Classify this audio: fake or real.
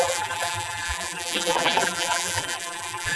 fake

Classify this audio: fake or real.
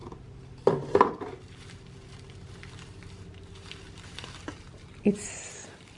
fake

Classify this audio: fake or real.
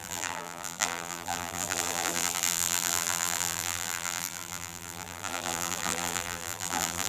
fake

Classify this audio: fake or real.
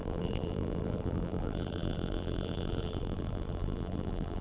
fake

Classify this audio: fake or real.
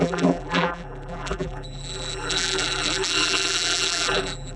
fake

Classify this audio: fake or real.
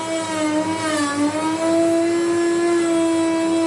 real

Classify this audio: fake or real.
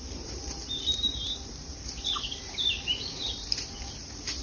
fake